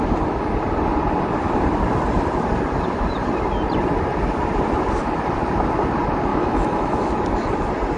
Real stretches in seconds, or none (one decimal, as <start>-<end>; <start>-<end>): 0.0-6.3; 7.1-8.0